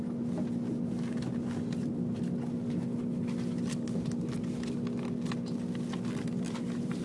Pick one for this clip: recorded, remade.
recorded